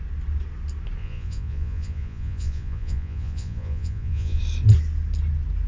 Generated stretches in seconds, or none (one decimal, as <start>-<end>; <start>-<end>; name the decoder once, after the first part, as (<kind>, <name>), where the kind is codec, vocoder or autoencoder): 1.0-4.4 (vocoder, Vocos)